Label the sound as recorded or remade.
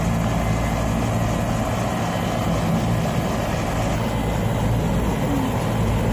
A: recorded